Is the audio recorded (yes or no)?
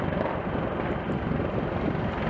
yes